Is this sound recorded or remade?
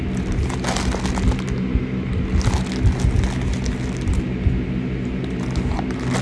recorded